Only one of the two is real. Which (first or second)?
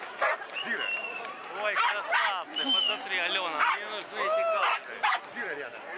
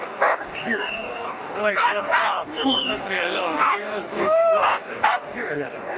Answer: first